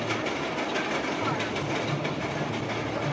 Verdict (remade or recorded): recorded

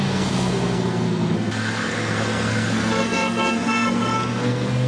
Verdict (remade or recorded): remade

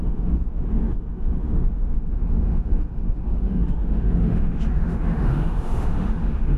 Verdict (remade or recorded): remade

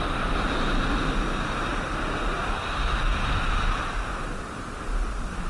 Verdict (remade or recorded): recorded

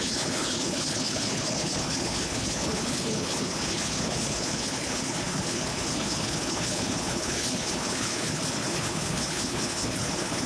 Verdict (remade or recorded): remade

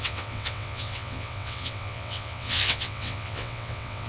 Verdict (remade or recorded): remade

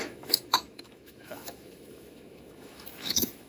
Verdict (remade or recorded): remade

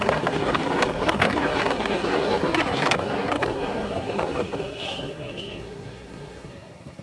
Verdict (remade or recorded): remade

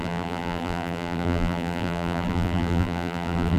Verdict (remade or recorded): remade